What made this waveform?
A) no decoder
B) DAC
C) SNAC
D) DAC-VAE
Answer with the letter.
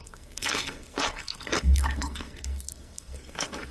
C